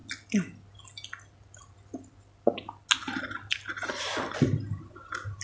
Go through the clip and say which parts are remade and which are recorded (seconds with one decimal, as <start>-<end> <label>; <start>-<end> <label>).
0.0-5.4 recorded